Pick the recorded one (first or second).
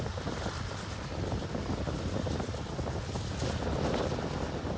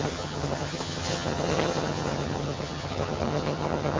first